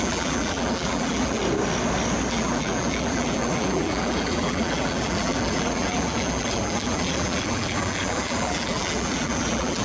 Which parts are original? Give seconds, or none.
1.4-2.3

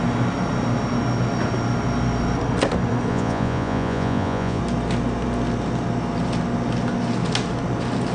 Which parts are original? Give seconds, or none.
0.0-3.1; 4.6-8.1

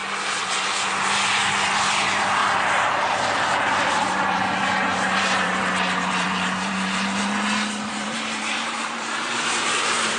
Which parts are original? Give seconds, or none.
0.0-1.9; 2.4-3.6